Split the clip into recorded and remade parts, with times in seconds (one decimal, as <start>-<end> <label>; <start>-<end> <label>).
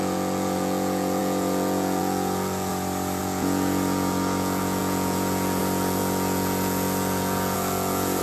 0.0-2.7 remade; 2.7-3.2 recorded; 3.2-8.2 remade